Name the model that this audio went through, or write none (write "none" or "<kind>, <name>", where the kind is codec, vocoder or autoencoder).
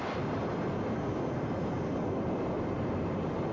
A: none